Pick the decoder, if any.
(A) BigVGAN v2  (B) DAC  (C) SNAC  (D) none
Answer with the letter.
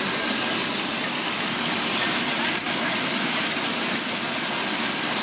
D